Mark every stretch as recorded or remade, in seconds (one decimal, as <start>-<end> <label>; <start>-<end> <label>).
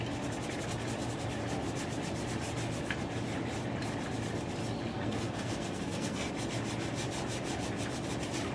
0.0-4.9 recorded; 4.9-6.3 remade; 6.3-8.5 recorded